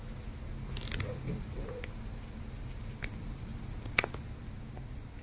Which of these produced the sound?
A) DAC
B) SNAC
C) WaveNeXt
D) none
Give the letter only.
D